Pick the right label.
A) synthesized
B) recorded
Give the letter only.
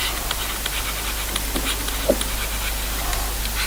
B